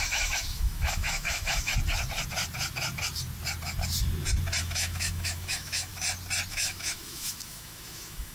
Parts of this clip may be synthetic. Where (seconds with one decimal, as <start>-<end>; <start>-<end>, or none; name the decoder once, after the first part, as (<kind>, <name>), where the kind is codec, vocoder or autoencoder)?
0.0-1.7 (autoencoder, DAC-VAE); 4.6-5.9; 6.5-8.3